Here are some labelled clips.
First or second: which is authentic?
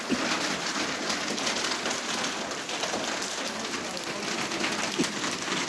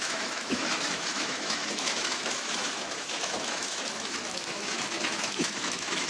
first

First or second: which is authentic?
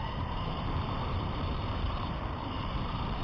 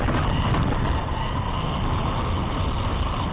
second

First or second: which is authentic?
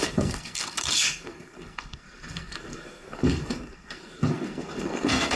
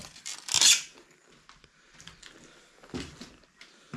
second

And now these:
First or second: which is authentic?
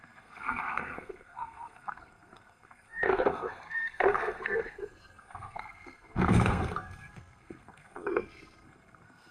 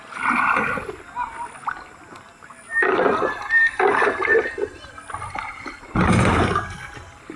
second